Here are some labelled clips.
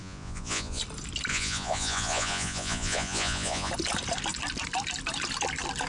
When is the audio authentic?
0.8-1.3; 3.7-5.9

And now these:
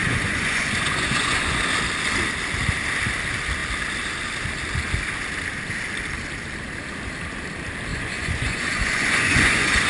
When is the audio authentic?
1.6-7.9

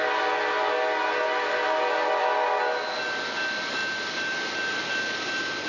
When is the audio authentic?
0.0-5.7

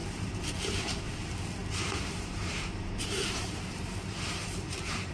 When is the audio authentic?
0.9-1.6

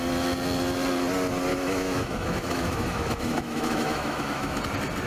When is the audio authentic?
0.0-1.5; 4.6-5.1

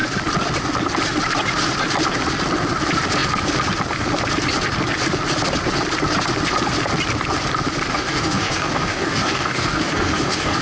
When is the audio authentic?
0.0-7.9